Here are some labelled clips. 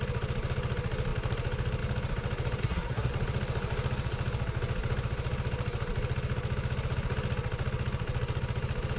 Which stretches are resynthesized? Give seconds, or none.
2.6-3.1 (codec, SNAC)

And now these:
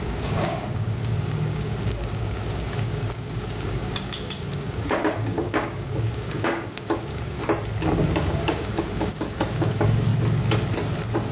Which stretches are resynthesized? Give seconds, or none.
0.0-7.4 (codec, DAC); 8.0-10.1

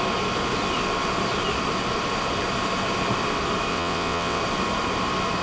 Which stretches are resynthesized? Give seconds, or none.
3.7-4.4 (vocoder, WaveNeXt)

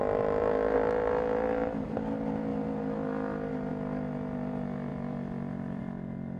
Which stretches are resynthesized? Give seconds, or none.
4.9-5.8 (vocoder, BigVGAN v2)

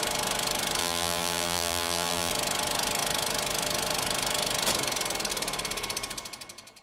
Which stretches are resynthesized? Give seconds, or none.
0.8-2.3 (vocoder, BigVGAN v2)